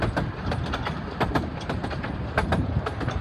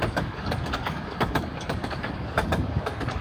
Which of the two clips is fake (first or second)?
second